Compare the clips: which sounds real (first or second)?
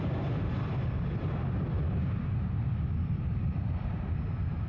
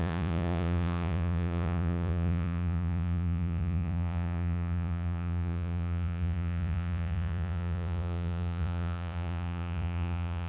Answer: first